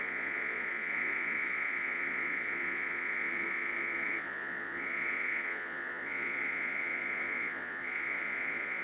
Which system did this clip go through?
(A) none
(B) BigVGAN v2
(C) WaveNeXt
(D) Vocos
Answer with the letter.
D